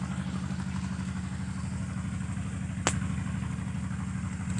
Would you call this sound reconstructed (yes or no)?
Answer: no